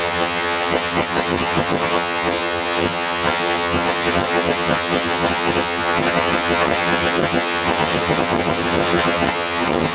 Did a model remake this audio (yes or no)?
yes